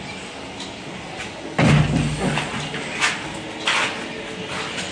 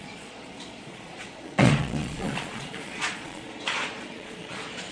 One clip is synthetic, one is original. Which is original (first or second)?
first